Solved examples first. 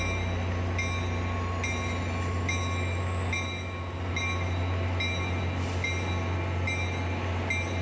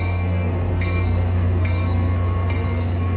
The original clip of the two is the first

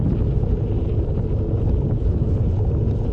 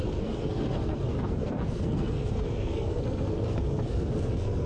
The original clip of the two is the first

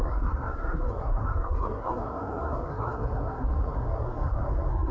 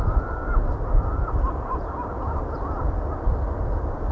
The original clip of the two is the second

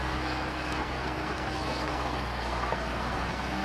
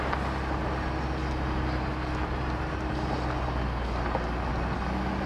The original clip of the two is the second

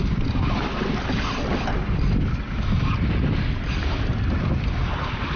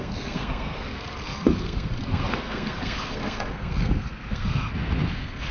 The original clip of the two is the first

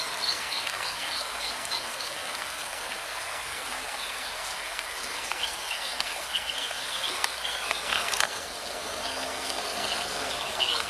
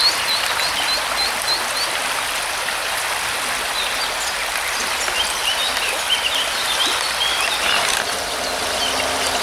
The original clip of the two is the second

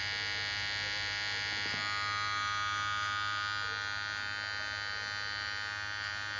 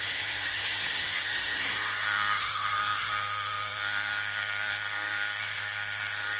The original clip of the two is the first